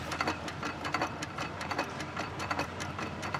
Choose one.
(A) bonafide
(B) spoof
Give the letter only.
B